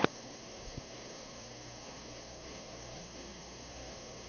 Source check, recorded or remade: remade